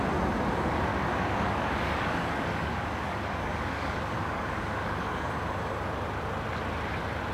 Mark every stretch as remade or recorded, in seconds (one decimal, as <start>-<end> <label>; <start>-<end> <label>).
0.0-0.9 recorded; 0.9-5.3 remade; 5.3-7.3 recorded